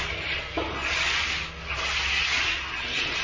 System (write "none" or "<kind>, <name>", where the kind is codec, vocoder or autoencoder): none